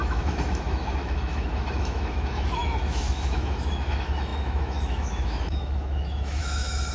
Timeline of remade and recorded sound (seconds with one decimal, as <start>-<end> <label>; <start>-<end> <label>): 0.0-6.9 remade